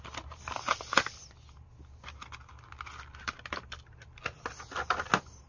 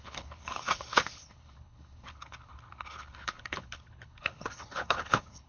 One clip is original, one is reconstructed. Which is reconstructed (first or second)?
second